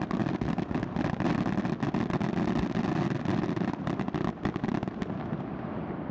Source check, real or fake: real